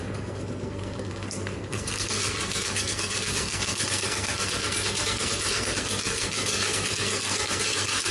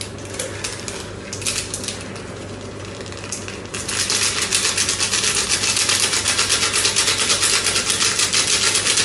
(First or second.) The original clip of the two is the second